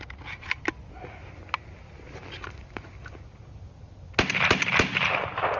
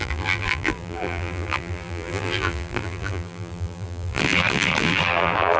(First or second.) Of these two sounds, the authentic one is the first